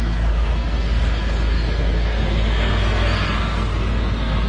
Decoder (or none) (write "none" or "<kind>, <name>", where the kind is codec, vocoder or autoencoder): codec, SNAC